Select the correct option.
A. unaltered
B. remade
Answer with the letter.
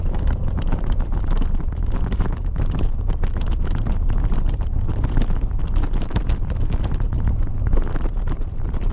B